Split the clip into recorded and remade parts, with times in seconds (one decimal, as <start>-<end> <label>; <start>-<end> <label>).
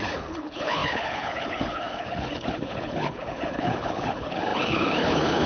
0.0-5.5 remade